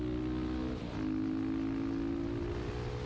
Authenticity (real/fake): real